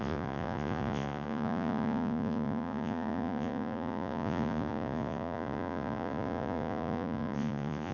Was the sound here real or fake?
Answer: fake